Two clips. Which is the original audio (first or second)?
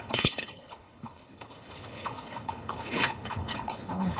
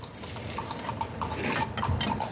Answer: second